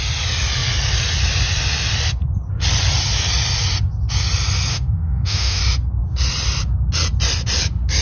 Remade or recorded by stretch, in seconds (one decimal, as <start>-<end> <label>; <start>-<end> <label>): 0.0-4.7 recorded; 4.7-5.6 remade; 5.6-8.0 recorded